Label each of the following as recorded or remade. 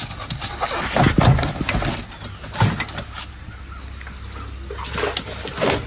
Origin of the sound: recorded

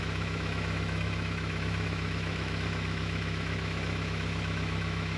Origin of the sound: remade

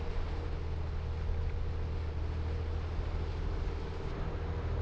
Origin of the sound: recorded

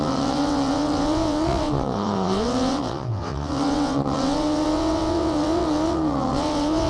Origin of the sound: remade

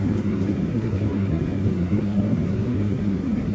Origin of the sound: remade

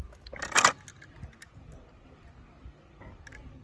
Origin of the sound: recorded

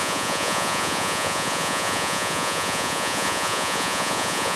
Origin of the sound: remade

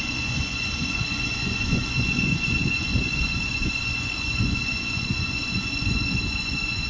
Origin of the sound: remade